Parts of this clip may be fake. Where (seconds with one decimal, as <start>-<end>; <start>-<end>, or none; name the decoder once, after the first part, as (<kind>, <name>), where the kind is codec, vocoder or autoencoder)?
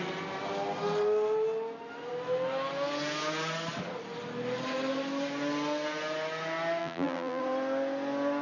6.8-7.4 (vocoder, BigVGAN v2)